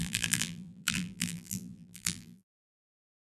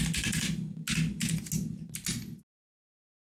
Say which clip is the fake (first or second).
first